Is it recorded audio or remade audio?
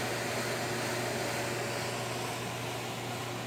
recorded